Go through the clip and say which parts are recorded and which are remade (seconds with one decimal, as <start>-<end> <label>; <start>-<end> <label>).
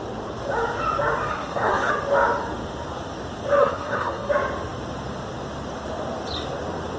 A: 0.0-1.3 recorded; 1.3-1.9 remade; 1.9-3.6 recorded; 3.6-4.3 remade; 4.3-7.0 recorded